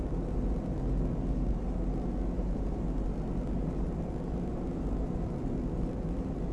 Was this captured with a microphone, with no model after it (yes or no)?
yes